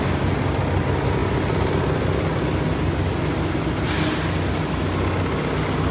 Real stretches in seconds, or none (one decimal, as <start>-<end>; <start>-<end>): 0.0-5.9